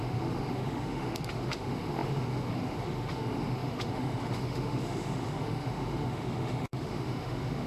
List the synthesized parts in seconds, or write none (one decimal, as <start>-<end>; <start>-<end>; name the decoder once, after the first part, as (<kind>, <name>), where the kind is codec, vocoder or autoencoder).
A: 0.0-7.7 (autoencoder, DAC-VAE)